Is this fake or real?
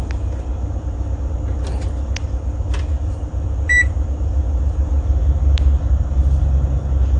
real